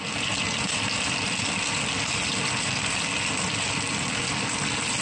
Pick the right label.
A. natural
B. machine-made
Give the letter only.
A